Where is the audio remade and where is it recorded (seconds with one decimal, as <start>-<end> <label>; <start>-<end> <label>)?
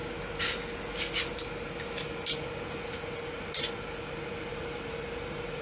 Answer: 0.0-4.5 recorded; 4.5-5.6 remade